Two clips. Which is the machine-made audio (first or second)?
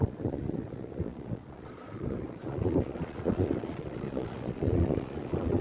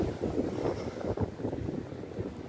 first